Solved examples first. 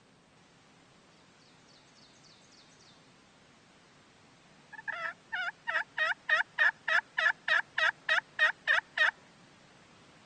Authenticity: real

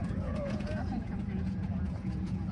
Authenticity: fake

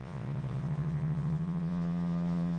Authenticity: fake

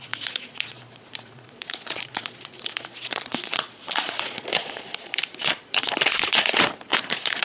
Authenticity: fake